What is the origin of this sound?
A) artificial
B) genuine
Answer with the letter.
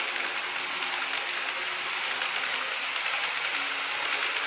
B